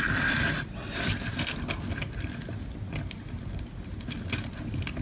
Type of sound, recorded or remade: recorded